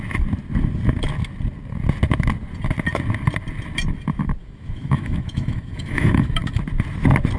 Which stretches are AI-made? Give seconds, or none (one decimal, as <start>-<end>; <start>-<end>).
4.4-6.6